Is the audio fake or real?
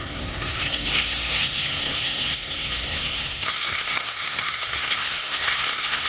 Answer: fake